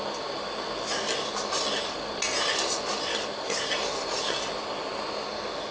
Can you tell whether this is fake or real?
real